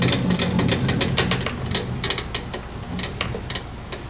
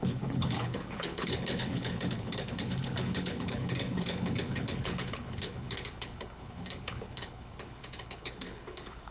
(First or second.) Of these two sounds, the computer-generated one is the second